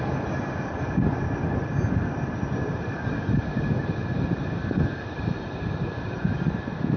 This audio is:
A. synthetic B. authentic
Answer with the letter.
B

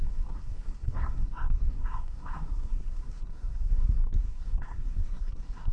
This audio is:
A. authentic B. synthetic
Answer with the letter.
B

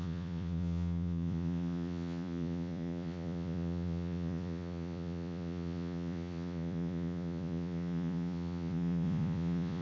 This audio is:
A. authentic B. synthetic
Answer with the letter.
B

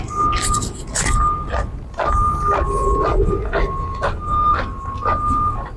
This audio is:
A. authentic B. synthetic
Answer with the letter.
A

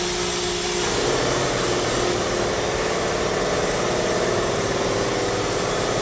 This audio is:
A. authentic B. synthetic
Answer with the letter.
A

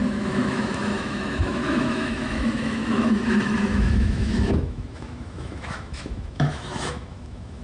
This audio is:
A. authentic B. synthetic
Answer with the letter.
B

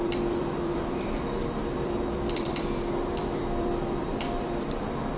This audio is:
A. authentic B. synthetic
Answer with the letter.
B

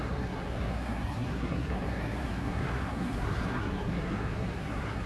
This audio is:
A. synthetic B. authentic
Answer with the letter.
A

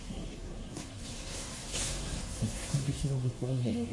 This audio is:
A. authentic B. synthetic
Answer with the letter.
B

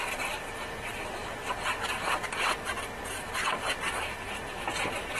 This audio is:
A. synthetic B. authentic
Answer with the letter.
B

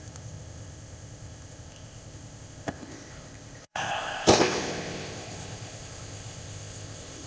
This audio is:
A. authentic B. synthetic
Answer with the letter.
B